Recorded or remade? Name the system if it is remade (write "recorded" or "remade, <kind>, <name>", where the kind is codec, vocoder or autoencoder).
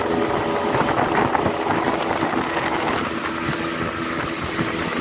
recorded